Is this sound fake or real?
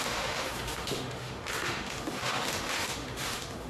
fake